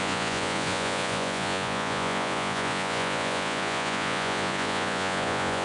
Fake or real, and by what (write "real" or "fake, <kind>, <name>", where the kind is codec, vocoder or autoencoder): fake, vocoder, Vocos